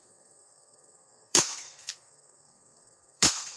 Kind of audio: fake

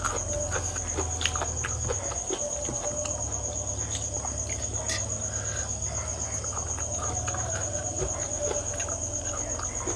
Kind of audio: real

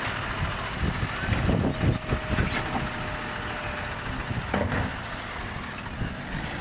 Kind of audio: real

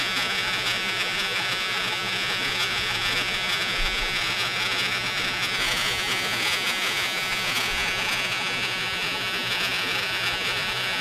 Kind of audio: fake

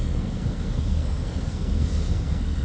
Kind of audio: fake